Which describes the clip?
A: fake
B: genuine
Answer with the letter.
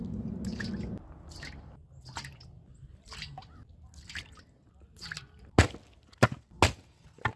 B